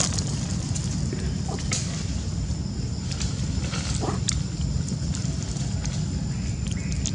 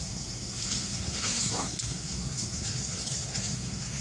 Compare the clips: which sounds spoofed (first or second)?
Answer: second